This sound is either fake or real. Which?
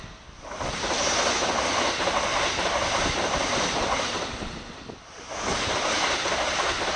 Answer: real